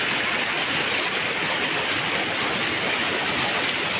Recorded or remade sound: recorded